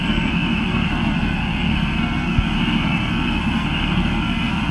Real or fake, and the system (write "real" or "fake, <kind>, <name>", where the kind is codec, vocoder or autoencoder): fake, codec, SNAC